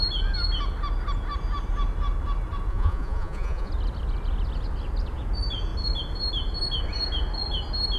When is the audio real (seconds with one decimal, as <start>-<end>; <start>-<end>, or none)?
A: 0.0-2.7; 3.7-8.0